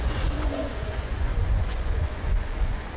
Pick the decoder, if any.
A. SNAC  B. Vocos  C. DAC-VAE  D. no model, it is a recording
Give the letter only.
B